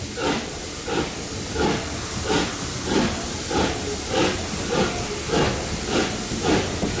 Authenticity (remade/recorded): recorded